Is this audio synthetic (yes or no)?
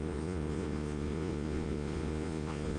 yes